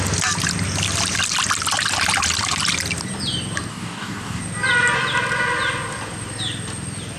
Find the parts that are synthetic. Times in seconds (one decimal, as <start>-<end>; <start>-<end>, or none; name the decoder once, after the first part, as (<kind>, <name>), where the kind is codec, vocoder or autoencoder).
3.7-4.4 (codec, DAC)